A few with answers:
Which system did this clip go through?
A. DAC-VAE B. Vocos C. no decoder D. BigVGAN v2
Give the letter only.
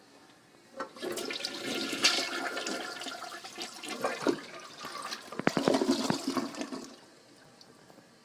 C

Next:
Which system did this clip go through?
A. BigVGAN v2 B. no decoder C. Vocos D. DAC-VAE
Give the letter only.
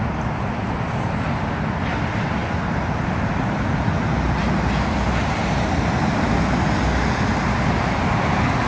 B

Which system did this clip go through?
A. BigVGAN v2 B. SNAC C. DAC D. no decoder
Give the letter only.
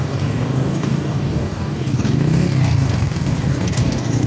C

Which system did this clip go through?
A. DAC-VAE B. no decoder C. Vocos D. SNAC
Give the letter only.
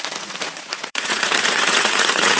C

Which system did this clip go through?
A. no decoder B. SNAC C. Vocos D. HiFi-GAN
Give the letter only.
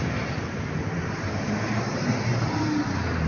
A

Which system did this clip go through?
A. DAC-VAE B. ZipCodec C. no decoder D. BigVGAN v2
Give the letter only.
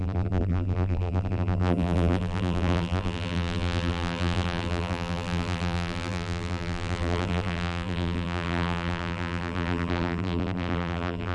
D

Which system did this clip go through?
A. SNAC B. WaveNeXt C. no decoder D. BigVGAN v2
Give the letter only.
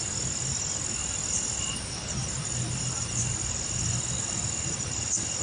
C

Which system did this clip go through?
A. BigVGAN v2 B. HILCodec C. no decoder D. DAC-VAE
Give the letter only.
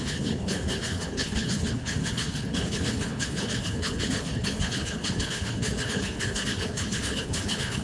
B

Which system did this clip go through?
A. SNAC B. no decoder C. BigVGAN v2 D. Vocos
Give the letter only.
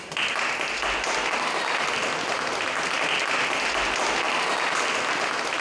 B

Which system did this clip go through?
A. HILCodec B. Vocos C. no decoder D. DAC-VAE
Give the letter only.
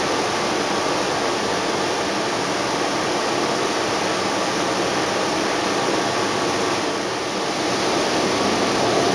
C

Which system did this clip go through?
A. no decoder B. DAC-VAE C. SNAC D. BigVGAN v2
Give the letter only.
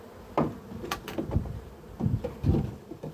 A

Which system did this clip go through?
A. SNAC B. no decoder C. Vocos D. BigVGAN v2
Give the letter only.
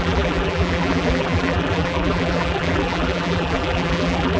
D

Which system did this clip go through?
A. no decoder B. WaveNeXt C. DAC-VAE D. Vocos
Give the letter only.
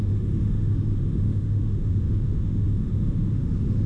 C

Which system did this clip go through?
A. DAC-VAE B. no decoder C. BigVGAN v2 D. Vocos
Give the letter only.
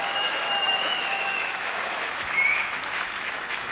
A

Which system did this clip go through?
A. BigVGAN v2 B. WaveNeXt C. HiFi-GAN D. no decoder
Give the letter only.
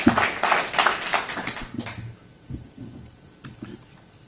A